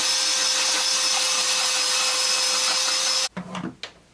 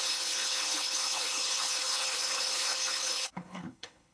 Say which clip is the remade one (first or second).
second